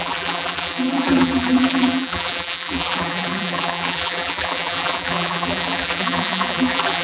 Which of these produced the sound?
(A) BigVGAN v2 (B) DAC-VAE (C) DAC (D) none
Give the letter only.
A